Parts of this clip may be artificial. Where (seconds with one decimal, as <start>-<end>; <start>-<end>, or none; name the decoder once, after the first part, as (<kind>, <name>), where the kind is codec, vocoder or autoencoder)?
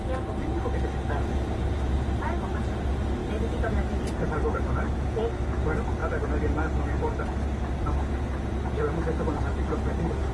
none